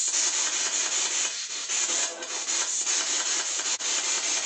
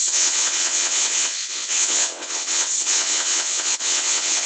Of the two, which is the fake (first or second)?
second